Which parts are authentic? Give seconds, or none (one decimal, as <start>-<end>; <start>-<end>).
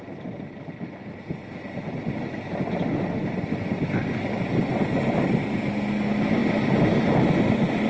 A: 0.0-7.9